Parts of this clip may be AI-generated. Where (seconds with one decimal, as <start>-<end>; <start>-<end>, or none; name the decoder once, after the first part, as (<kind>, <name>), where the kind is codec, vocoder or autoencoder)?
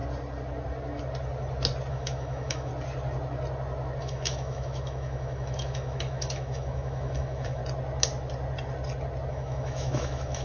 1.9-2.7 (autoencoder, DAC-VAE); 4.0-7.6; 9.3-10.4